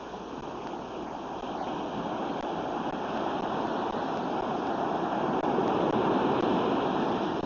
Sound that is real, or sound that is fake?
real